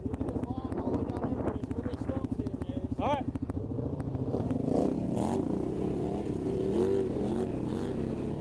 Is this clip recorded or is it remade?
recorded